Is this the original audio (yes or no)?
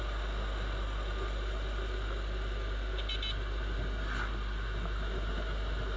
yes